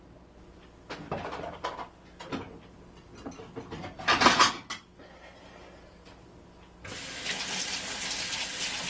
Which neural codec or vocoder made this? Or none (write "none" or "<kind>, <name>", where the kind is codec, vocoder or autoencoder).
none